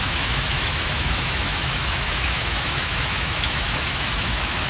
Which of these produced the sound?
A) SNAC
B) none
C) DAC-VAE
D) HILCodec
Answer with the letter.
C